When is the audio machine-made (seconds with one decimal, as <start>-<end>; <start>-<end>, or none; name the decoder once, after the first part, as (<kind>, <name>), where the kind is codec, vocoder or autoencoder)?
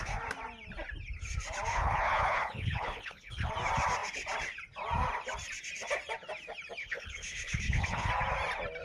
1.7-3.5 (codec, HILCodec); 6.8-8.1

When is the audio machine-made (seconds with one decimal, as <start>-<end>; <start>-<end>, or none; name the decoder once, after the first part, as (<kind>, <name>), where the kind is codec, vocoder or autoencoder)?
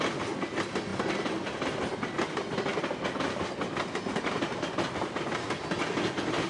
none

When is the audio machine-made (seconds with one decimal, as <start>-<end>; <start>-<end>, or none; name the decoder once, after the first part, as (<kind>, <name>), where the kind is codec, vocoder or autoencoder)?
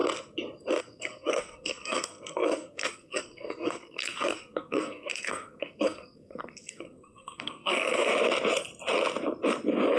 0.8-8.1 (codec, SNAC)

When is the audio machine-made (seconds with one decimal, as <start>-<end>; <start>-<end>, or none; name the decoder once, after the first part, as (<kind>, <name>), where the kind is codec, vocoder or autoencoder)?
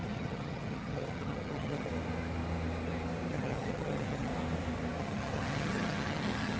0.0-1.9 (vocoder, HiFi-GAN); 3.3-4.3; 5.0-6.6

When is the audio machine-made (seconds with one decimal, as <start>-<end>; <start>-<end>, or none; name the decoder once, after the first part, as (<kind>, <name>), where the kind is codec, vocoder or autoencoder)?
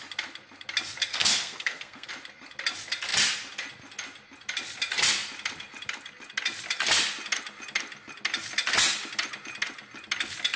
1.1-2.1 (codec, SNAC)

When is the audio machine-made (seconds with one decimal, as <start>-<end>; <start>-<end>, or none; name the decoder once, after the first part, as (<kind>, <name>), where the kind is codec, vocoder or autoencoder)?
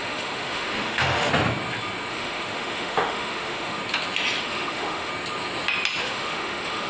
0.0-1.3 (autoencoder, DAC-VAE); 2.1-3.8; 4.4-5.1; 6.0-6.9